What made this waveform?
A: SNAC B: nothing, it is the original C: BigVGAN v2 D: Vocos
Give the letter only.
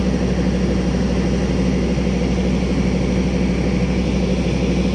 B